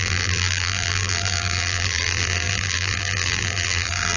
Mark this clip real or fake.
fake